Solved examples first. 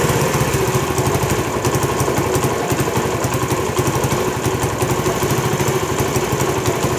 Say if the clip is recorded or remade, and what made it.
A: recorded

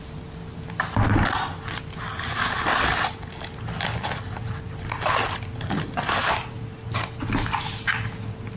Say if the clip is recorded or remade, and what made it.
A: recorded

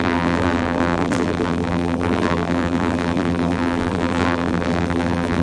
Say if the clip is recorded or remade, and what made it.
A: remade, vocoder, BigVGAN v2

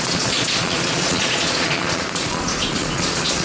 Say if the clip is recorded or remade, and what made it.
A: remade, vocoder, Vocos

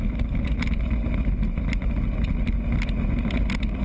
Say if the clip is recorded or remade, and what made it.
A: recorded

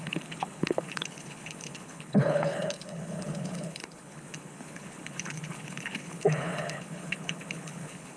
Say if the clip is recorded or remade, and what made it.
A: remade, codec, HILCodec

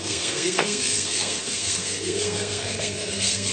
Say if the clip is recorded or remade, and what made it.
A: remade, codec, SNAC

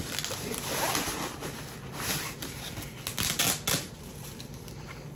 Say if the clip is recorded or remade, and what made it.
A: recorded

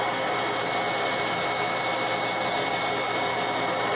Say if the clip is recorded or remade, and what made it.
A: recorded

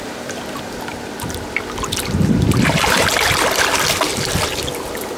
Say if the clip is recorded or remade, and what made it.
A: recorded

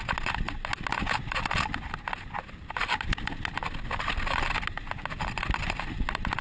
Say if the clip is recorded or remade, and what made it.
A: recorded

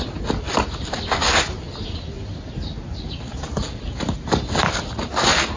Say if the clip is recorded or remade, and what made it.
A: recorded